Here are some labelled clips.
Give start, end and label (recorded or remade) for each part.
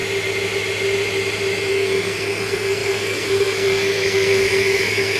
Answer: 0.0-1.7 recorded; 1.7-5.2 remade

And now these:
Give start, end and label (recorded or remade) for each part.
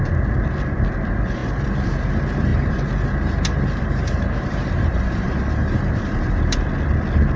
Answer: 0.0-1.4 recorded; 1.4-2.1 remade; 2.1-2.5 recorded; 2.5-6.7 remade; 6.7-7.4 recorded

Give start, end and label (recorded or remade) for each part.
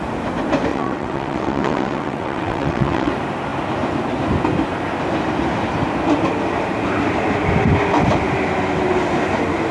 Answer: 0.0-0.7 recorded; 0.7-3.1 remade; 3.1-9.7 recorded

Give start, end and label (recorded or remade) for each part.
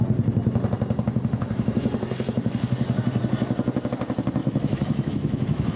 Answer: 0.0-4.4 recorded; 4.4-5.8 remade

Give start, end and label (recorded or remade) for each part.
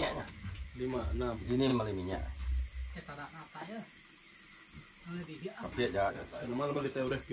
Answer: 0.0-1.7 remade; 1.7-6.1 recorded; 6.1-7.3 remade